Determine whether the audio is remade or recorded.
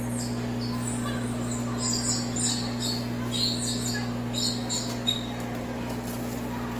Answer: recorded